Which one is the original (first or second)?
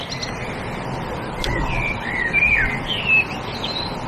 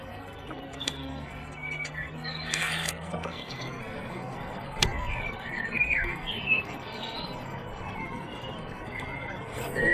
first